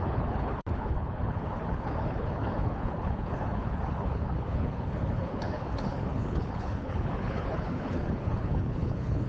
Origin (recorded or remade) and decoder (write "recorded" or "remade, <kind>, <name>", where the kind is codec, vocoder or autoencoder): remade, codec, HILCodec